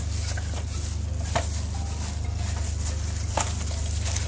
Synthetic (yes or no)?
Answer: no